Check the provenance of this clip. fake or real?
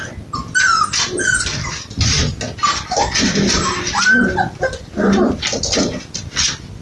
real